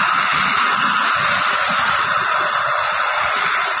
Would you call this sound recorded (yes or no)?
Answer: no